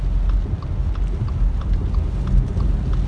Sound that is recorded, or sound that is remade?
recorded